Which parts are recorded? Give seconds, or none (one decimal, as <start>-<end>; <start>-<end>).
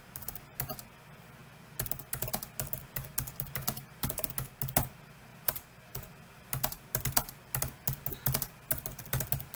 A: 0.0-9.6